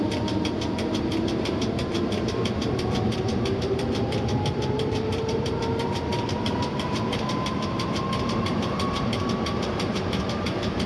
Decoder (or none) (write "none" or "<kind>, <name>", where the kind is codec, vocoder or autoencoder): vocoder, BigVGAN v2